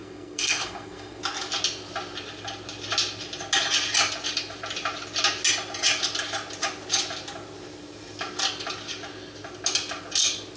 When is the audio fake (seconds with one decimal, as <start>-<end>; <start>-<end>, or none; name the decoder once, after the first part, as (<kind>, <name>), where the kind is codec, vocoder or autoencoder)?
0.0-1.2 (codec, SNAC)